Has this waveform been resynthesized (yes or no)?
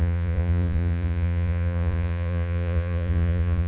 yes